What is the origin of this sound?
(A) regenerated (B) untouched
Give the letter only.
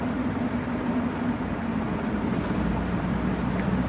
B